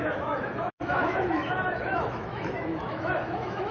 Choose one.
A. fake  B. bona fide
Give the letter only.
A